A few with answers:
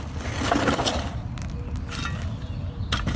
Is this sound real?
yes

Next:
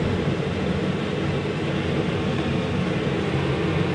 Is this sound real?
yes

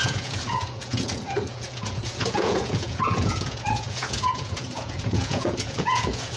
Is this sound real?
no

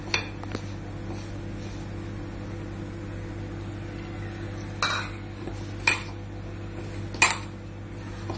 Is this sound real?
yes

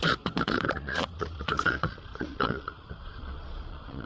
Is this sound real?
no